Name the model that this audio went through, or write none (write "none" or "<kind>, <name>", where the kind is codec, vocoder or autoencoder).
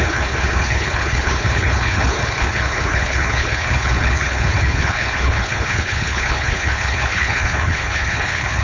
codec, HILCodec